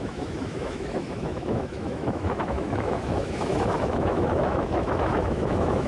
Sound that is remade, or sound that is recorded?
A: remade